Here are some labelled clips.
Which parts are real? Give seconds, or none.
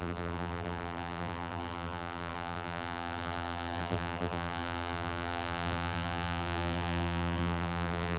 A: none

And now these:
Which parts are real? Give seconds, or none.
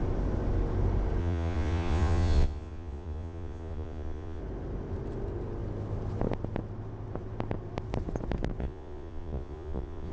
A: 0.0-1.2; 4.4-8.6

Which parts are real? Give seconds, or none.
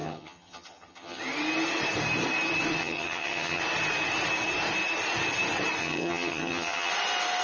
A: 1.2-2.8; 3.6-5.8; 6.9-7.4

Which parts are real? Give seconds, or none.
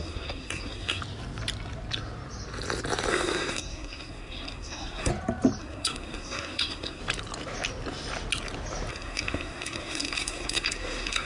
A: 1.0-3.1; 5.1-5.6; 7.0-8.9